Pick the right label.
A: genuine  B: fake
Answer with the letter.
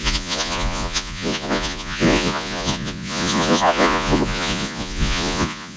B